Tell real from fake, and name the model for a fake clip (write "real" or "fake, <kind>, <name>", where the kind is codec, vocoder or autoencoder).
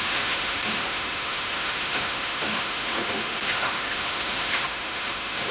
fake, autoencoder, DAC-VAE